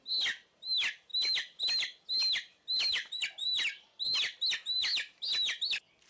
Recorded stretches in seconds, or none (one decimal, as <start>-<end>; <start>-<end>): 0.0-6.1